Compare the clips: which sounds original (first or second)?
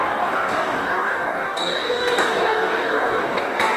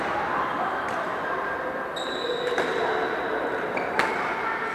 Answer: second